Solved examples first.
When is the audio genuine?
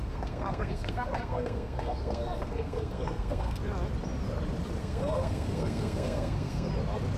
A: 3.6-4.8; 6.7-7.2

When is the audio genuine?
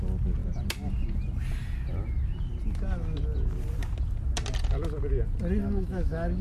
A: 0.0-5.6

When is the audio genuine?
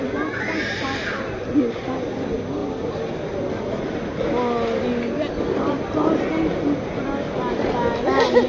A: 0.0-8.5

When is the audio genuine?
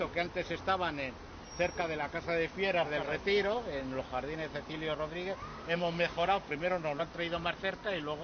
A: 0.0-5.5; 7.0-8.2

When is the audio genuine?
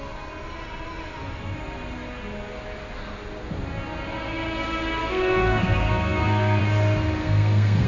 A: 0.0-5.0; 6.6-7.2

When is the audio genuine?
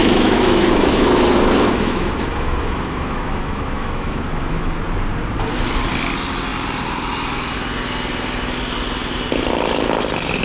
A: 4.8-10.4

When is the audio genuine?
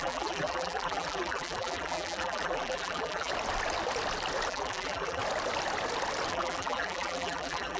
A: 3.3-4.5; 5.2-6.3